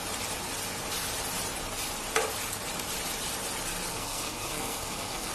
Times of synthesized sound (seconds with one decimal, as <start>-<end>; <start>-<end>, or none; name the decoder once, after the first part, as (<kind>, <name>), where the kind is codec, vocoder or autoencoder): 3.9-5.3 (codec, SNAC)